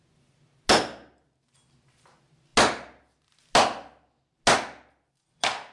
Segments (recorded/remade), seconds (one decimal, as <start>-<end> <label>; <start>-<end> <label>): 0.0-5.7 recorded